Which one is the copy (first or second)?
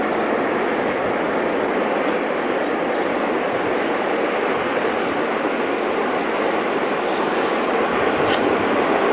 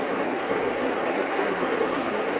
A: second